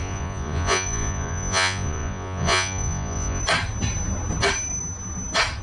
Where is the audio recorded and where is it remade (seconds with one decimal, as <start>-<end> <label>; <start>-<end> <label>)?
0.0-3.4 remade; 3.4-5.6 recorded